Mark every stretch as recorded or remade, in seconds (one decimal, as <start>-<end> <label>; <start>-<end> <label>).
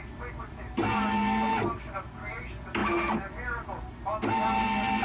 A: 0.0-2.8 recorded; 2.8-3.3 remade; 3.3-5.0 recorded